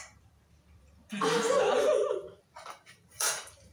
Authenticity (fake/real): fake